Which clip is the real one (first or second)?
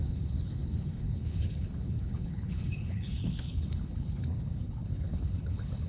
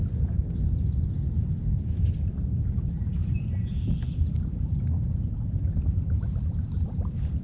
second